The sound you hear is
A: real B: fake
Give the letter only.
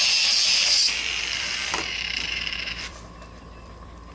B